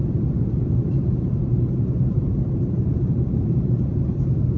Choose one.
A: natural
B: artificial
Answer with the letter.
B